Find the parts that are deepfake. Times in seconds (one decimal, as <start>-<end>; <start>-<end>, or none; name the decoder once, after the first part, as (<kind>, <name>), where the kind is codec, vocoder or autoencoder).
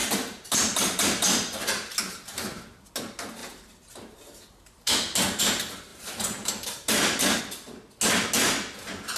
0.0-2.9 (vocoder, BigVGAN v2); 3.4-5.4; 5.9-7.4